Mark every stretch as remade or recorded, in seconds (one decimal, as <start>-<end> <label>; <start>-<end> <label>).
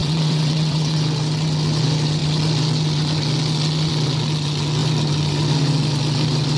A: 0.0-1.0 remade; 1.0-6.6 recorded